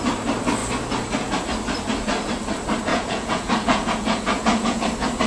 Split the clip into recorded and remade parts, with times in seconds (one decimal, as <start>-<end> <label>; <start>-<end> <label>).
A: 0.0-2.9 recorded; 2.9-4.8 remade; 4.8-5.3 recorded